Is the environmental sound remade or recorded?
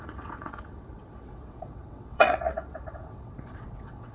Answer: remade